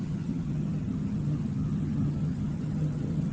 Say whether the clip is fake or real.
fake